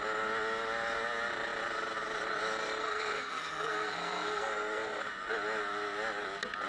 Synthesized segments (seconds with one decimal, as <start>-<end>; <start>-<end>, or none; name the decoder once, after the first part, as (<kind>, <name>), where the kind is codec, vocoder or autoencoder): 2.8-5.0 (codec, SNAC)